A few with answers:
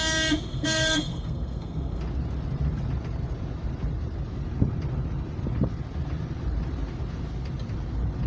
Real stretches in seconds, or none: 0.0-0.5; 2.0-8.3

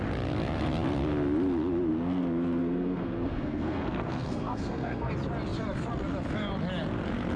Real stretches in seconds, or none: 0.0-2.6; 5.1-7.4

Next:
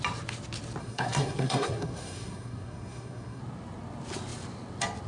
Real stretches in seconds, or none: 0.0-0.8; 3.4-5.1

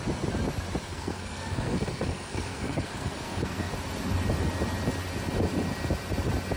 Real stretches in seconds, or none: 0.0-0.9; 3.7-6.6